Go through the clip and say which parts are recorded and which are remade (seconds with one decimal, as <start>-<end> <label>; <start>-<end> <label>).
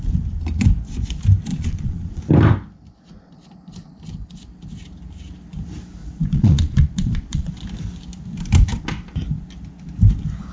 0.0-1.5 recorded; 1.5-2.2 remade; 2.2-6.0 recorded; 6.0-7.5 remade; 7.5-10.5 recorded